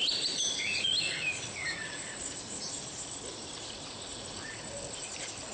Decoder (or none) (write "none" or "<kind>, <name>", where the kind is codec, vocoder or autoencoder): none